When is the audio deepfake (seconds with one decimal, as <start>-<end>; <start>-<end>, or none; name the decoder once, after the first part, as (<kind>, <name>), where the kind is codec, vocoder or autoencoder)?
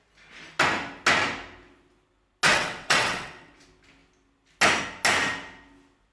2.5-3.6 (vocoder, WaveNeXt)